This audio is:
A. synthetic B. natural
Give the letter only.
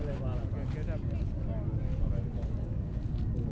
B